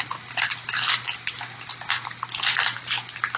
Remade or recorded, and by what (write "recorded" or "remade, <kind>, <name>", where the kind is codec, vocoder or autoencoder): recorded